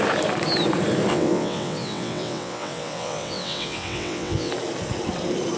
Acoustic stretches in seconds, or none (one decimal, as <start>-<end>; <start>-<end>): 0.0-1.1; 4.5-5.6